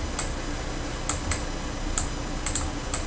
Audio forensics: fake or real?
real